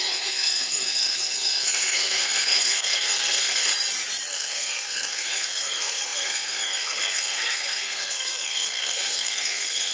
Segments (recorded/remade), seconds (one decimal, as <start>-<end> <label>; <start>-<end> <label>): 0.0-3.7 remade; 3.7-4.3 recorded; 4.3-9.9 remade